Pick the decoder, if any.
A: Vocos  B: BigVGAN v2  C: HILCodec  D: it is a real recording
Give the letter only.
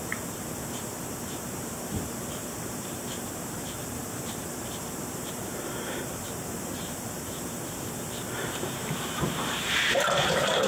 B